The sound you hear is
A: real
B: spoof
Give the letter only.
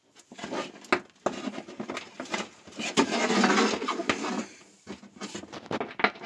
A